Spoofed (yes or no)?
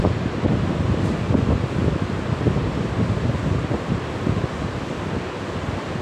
no